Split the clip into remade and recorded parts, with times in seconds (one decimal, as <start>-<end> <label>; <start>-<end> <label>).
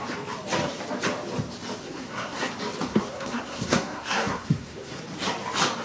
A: 0.0-1.8 recorded; 1.8-2.5 remade; 2.5-2.9 recorded; 2.9-5.0 remade; 5.0-5.8 recorded